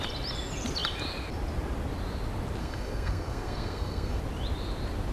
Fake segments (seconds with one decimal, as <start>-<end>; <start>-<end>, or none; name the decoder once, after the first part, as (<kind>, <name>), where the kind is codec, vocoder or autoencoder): 2.6-4.2 (codec, SNAC)